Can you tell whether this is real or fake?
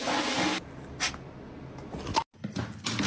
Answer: real